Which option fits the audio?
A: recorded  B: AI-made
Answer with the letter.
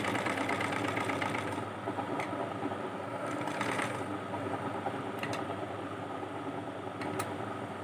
A